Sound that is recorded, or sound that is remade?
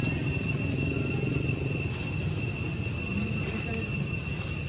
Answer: recorded